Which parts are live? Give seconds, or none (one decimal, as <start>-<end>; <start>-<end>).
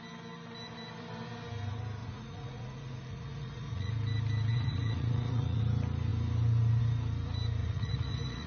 0.0-2.0; 3.9-4.5; 5.6-7.6